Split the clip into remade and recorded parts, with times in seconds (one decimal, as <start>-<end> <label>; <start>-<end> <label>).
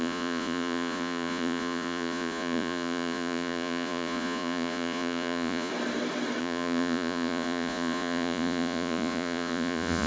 0.0-5.7 remade; 5.7-6.4 recorded; 6.4-10.1 remade